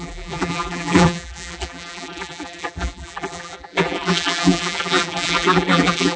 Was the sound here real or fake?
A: fake